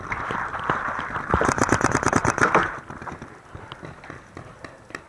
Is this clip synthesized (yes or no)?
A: no